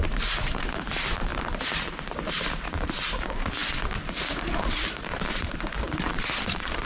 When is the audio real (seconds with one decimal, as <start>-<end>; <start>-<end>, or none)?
none